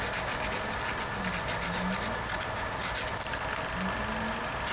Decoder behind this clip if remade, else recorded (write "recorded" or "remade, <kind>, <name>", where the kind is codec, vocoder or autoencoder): recorded